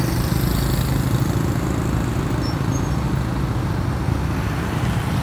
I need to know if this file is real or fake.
real